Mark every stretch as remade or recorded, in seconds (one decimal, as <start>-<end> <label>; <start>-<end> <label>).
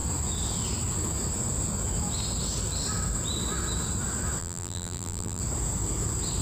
0.0-4.4 recorded; 4.4-5.4 remade; 5.4-6.4 recorded